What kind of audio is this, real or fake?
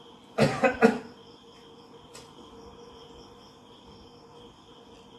real